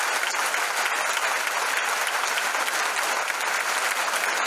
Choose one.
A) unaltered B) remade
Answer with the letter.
A